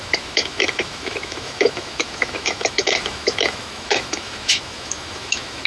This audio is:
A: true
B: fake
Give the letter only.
B